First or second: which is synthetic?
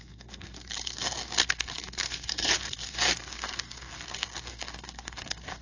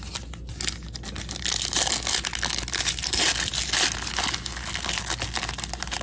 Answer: first